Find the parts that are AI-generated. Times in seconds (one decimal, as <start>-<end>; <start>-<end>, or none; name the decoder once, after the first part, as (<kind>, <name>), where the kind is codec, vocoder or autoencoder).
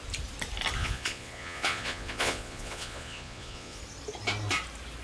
0.8-3.8 (vocoder, Vocos)